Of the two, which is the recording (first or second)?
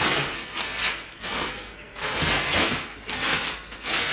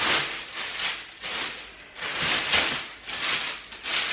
second